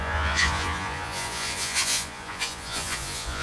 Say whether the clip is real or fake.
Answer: fake